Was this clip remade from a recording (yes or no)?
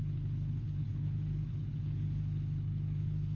yes